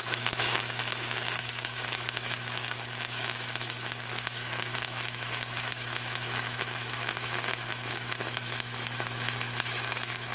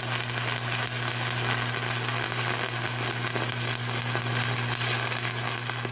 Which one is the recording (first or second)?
second